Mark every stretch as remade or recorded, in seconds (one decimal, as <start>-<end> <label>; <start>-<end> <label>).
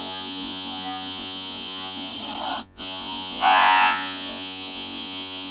0.0-2.1 remade; 2.1-2.6 recorded; 2.6-5.5 remade